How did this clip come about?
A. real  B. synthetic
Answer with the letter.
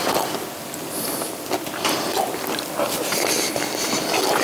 A